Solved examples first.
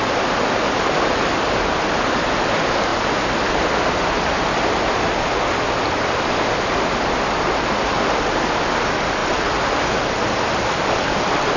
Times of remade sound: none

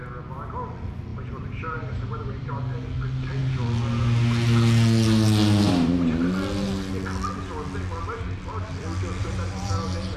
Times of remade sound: 1.1-2.6 (vocoder, BigVGAN v2); 9.2-10.2

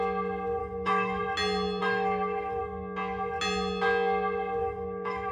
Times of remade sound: 0.6-1.2 (autoencoder, DAC-VAE); 1.8-2.6; 4.6-5.3

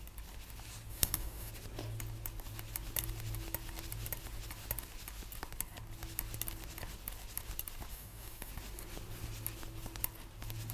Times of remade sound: 0.9-1.5 (codec, DAC); 7.9-8.5